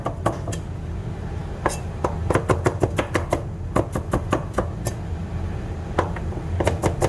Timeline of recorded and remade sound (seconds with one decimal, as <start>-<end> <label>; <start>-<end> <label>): 0.0-7.1 recorded

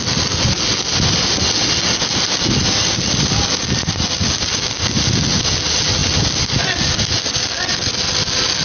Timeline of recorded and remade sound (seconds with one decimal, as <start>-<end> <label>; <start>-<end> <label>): 0.0-8.6 recorded

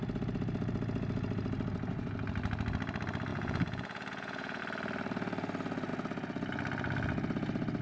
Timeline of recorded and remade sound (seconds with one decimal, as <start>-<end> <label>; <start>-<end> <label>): 0.0-3.3 recorded; 3.3-4.6 remade; 4.6-7.8 recorded

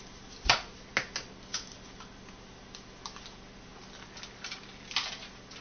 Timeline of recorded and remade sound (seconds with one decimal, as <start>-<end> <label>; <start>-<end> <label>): 0.0-5.6 recorded

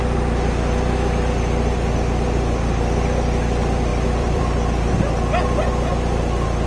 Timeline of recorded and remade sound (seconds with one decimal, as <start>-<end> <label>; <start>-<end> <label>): 0.0-3.9 recorded; 3.9-4.4 remade; 4.4-6.7 recorded